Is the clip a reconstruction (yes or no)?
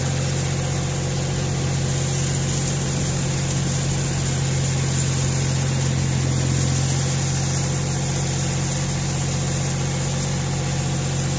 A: no